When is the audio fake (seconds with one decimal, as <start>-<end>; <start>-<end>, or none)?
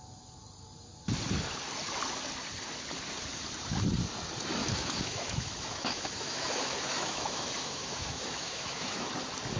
4.6-9.1